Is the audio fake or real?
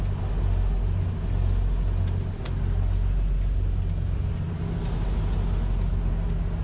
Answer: real